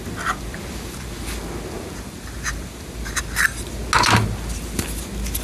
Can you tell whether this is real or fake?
real